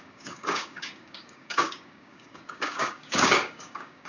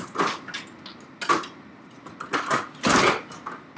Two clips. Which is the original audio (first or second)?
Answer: second